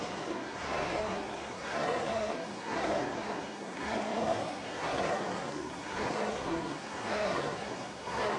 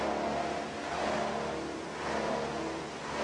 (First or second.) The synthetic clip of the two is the first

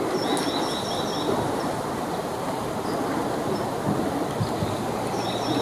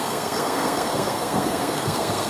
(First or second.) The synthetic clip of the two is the second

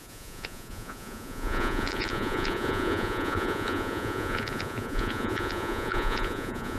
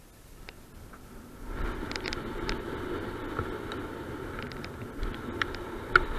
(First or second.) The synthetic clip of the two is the first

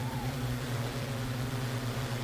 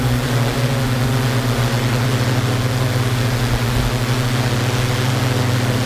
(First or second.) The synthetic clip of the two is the first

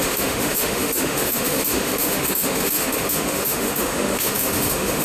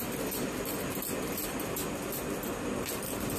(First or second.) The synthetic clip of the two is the first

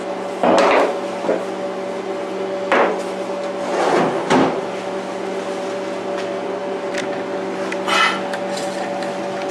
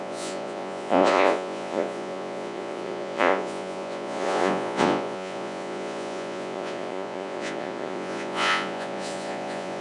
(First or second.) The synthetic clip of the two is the second